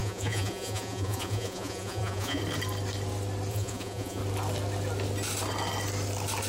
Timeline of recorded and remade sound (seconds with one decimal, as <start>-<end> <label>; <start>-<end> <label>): 0.0-2.4 remade; 2.4-3.5 recorded; 3.5-4.2 remade; 4.2-6.5 recorded